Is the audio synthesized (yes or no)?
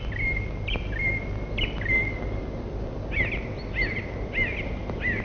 no